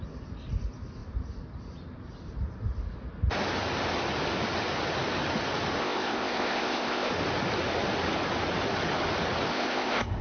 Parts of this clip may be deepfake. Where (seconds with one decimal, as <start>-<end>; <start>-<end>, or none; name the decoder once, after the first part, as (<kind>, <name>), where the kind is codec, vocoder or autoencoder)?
5.8-7.1 (codec, ZipCodec); 9.5-10.2